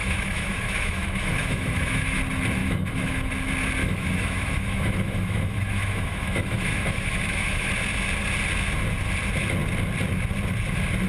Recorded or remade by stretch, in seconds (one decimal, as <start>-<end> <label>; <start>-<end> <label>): 0.0-2.2 remade; 2.2-2.6 recorded; 2.6-3.3 remade; 3.3-3.8 recorded; 3.8-7.7 remade; 7.7-11.1 recorded

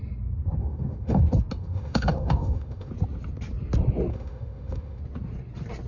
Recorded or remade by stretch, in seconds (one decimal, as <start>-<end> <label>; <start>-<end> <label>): 0.0-0.6 recorded; 0.6-1.2 remade; 1.2-1.6 recorded; 1.6-2.9 remade; 2.9-4.1 recorded; 4.1-5.0 remade; 5.0-5.9 recorded

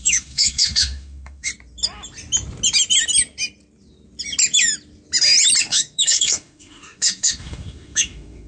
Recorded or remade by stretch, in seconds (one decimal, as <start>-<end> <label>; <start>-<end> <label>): 0.0-1.5 remade; 1.5-5.6 recorded; 5.6-8.5 remade

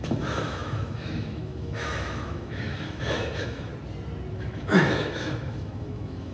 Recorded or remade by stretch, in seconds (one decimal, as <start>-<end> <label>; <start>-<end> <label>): 0.0-3.7 remade; 3.7-4.3 recorded; 4.3-6.3 remade